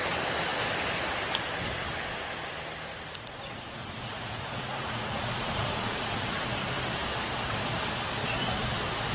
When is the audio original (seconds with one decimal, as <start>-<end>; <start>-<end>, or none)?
0.0-2.9; 6.4-9.1